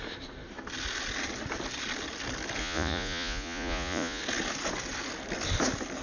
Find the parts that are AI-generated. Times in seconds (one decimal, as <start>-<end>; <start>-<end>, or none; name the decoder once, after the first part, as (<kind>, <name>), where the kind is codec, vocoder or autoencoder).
2.6-4.2 (vocoder, Vocos)